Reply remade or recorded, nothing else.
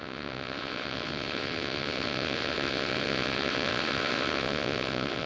remade